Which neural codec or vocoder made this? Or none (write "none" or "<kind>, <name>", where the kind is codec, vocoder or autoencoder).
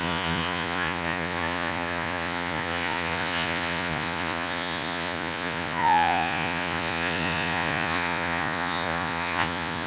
vocoder, Vocos